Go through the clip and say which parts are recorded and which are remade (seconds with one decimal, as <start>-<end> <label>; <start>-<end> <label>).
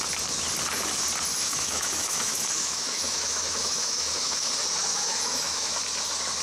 0.0-1.3 recorded; 1.3-4.5 remade; 4.5-4.9 recorded; 4.9-5.7 remade; 5.7-6.4 recorded